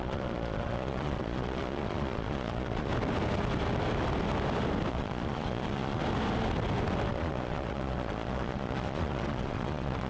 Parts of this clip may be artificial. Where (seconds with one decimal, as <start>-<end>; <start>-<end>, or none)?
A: 0.0-2.9; 4.9-6.0; 7.1-10.1